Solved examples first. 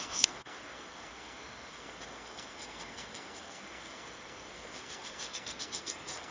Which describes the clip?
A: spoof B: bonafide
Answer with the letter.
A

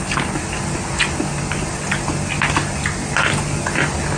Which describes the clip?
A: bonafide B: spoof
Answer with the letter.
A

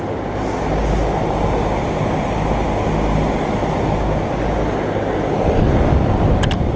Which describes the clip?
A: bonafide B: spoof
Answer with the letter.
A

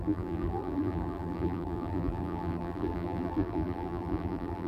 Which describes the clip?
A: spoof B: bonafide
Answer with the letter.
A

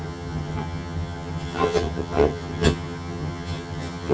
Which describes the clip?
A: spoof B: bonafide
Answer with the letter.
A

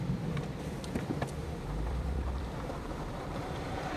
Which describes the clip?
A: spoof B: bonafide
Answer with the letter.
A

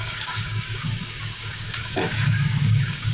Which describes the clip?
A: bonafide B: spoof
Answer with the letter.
B